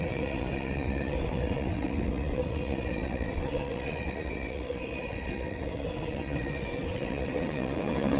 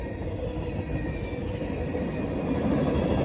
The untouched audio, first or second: second